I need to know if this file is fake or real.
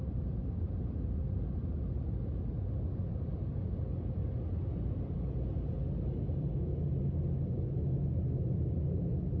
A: real